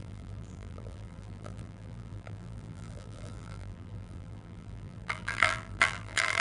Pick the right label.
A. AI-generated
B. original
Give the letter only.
A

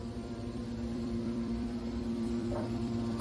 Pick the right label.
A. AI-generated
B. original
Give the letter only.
A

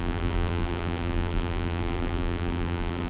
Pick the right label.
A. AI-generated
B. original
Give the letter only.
A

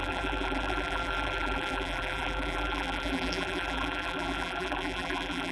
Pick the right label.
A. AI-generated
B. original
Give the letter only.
A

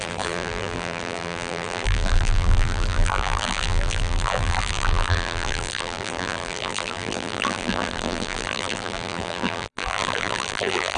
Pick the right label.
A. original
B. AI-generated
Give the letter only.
B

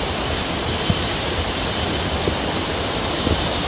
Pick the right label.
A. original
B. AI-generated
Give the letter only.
B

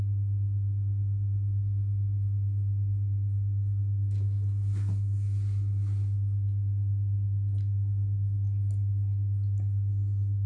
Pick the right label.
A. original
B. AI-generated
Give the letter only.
A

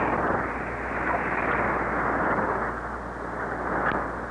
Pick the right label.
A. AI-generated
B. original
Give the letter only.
B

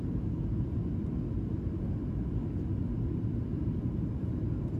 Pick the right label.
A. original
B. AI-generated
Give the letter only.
A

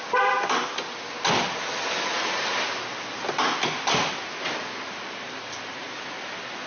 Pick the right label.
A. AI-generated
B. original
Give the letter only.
B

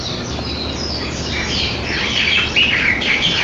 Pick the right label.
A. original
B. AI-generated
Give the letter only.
B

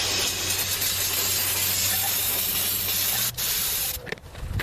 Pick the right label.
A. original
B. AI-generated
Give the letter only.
A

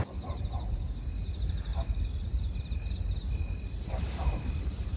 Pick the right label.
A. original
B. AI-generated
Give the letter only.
A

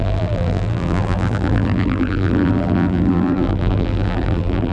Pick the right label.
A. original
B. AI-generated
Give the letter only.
B